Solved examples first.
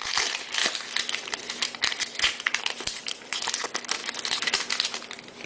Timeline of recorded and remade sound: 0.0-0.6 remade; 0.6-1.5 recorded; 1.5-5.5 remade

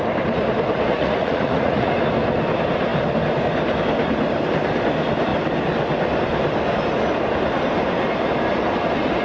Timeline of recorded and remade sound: 0.0-0.9 recorded; 0.9-1.9 remade; 1.9-9.2 recorded

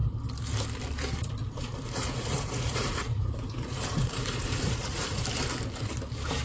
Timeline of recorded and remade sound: 0.0-1.4 recorded; 1.4-5.2 remade; 5.2-6.4 recorded

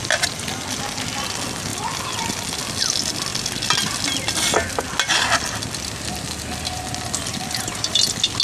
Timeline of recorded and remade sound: 0.0-8.4 recorded